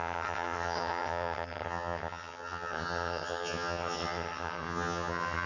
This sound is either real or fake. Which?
fake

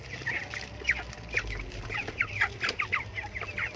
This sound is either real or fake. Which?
real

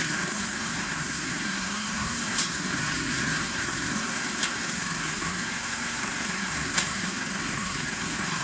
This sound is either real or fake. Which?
fake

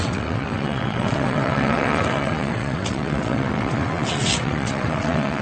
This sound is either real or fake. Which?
fake